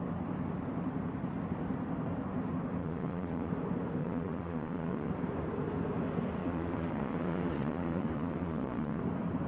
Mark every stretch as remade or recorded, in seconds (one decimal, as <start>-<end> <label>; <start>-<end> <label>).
0.0-2.8 recorded; 2.8-3.5 remade; 3.5-4.0 recorded; 4.0-5.1 remade; 5.1-6.4 recorded; 6.4-9.0 remade; 9.0-9.5 recorded